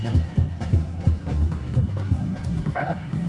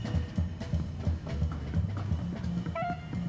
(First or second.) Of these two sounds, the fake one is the first